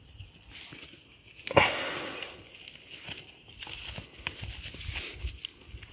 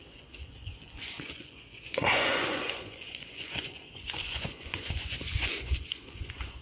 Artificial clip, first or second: second